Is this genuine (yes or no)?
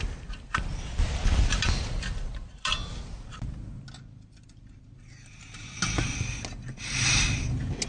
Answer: yes